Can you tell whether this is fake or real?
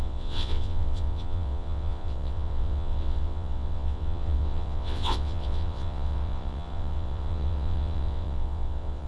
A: fake